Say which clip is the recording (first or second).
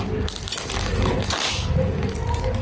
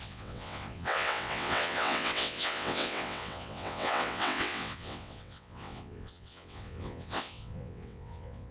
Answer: first